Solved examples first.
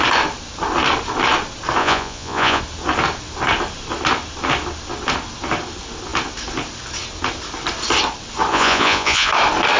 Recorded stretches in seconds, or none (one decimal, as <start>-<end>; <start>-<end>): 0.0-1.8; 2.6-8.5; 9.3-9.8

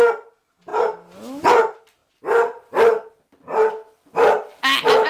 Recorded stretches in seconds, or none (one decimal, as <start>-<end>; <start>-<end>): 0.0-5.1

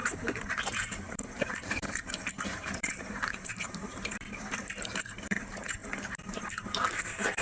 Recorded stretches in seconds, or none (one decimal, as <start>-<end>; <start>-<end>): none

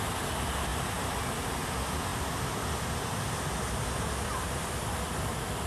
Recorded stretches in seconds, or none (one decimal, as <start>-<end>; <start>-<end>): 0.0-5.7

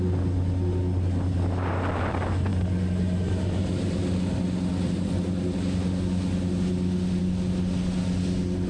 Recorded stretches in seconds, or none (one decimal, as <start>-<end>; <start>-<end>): 0.0-8.7